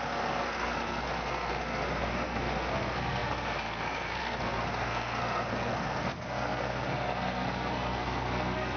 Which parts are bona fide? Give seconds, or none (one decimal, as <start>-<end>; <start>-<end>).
none